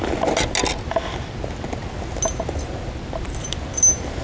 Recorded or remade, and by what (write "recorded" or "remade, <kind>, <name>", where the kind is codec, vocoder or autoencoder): recorded